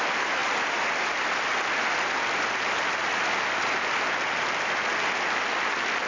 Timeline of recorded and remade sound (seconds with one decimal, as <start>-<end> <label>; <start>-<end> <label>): 0.0-6.1 recorded